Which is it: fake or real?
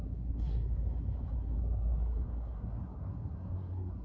fake